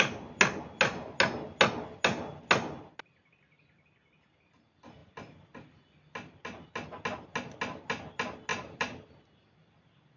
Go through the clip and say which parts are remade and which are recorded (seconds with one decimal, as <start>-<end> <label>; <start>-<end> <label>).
0.0-8.5 recorded; 8.5-9.2 remade; 9.2-10.2 recorded